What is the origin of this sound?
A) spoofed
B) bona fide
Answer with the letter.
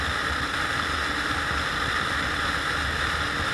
B